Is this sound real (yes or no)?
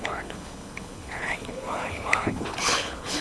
no